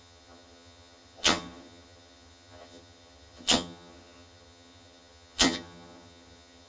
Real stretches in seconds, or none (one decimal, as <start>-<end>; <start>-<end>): none